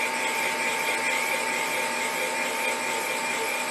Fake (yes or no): no